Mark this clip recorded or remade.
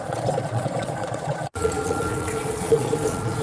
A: remade